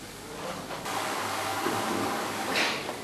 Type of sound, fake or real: fake